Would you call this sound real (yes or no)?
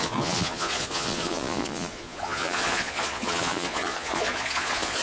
no